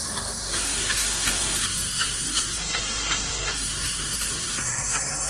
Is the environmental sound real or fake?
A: fake